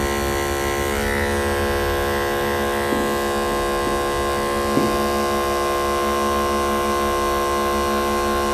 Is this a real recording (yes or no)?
yes